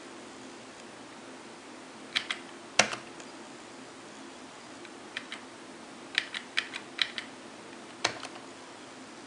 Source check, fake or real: real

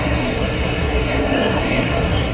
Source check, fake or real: fake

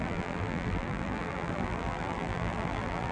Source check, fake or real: fake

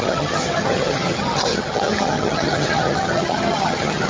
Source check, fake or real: fake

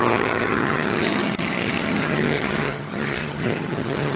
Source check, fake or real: fake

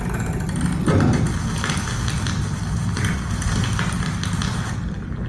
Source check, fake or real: real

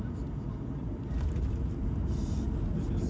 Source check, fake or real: real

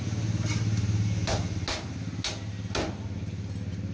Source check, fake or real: real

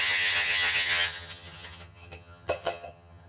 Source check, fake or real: fake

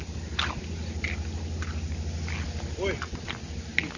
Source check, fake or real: real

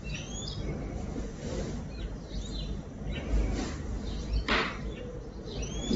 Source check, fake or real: real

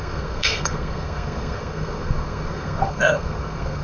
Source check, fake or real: fake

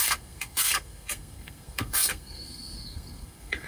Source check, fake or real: fake